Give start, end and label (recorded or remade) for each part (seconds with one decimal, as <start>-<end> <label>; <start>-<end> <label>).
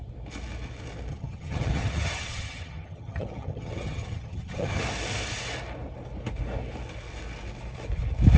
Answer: 0.0-1.1 recorded; 1.1-4.8 remade; 4.8-8.4 recorded